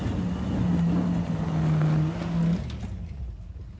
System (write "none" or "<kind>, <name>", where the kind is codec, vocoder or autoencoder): none